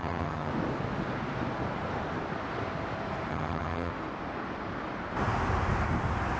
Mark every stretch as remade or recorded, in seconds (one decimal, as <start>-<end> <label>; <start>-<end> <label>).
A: 0.0-0.5 remade; 0.5-3.3 recorded; 3.3-3.9 remade; 3.9-6.4 recorded